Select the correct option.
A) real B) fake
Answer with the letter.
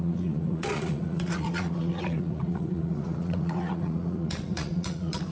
B